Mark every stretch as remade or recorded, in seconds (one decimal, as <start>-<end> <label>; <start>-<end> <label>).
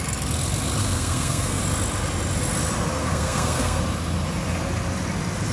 0.0-0.8 recorded; 0.8-1.6 remade; 1.6-3.0 recorded; 3.0-3.8 remade; 3.8-5.5 recorded